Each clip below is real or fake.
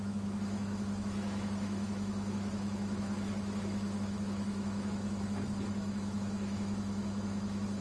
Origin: fake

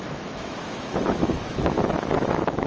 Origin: fake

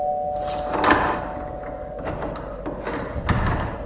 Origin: real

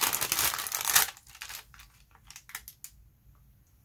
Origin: real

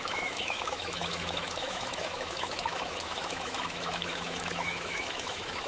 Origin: fake